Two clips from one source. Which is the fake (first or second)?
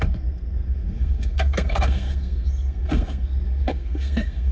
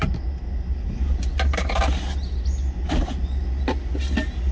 first